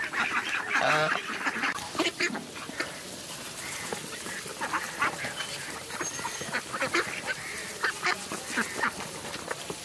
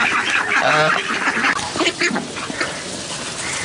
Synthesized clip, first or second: first